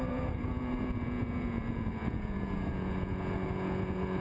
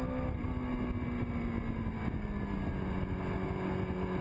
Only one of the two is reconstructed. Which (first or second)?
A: first